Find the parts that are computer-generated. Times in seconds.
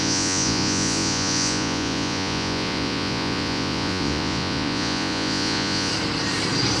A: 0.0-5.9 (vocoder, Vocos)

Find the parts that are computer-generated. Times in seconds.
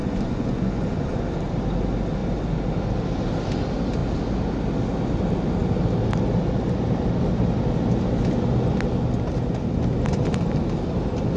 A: 0.0-1.2 (vocoder, Vocos)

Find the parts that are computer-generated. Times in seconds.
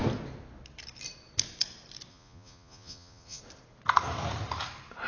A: 2.1-3.4 (vocoder, Vocos)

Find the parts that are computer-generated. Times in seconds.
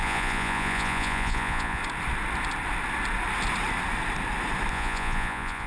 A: 0.0-1.8 (vocoder, Vocos); 4.7-5.7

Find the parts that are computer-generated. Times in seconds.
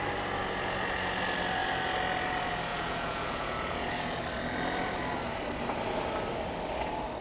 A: 2.7-4.2 (vocoder, Vocos)